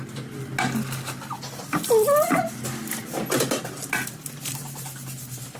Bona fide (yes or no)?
yes